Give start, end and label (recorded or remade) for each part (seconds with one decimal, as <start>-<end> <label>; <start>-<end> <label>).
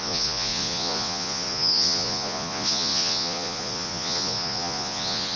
0.0-5.4 remade